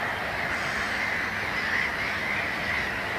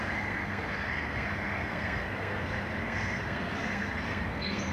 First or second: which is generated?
second